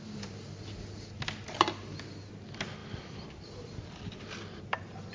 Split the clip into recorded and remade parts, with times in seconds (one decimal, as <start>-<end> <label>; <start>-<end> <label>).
0.0-5.1 recorded